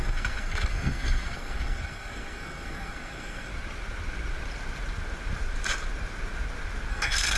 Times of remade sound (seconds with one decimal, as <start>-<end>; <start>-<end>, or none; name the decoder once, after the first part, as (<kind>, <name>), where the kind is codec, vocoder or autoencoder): 0.0-3.5 (codec, SNAC); 6.9-7.4